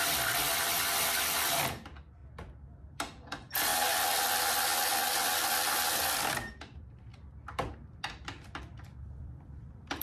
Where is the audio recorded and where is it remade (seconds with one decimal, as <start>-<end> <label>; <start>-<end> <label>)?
0.0-2.2 remade; 2.2-2.7 recorded; 2.7-3.7 remade; 3.7-4.8 recorded; 4.8-7.1 remade; 7.1-8.6 recorded; 8.6-10.0 remade